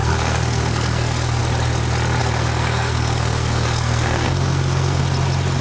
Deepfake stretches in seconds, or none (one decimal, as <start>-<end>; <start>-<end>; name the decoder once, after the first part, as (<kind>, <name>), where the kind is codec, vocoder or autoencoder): 0.0-1.4 (codec, SNAC); 2.2-5.0